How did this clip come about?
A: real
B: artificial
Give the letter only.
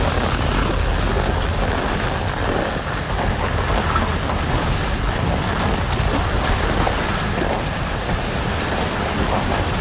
A